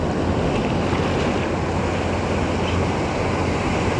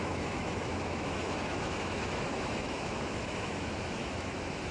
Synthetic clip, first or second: second